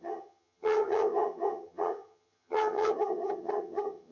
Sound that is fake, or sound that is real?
fake